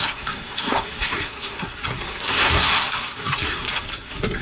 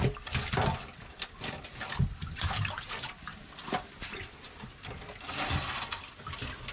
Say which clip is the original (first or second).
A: second